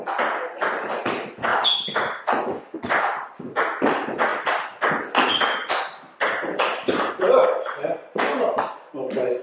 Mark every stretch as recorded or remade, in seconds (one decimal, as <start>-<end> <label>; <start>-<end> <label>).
0.0-4.3 recorded; 4.3-4.8 remade; 4.8-5.6 recorded; 5.6-9.4 remade